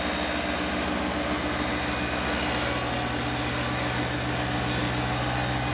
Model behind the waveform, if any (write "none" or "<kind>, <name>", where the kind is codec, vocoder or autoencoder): none